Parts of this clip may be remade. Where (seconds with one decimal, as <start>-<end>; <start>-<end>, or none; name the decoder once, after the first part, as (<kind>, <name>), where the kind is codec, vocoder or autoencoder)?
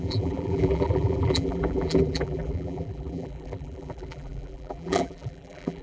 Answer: 0.0-5.8 (vocoder, BigVGAN v2)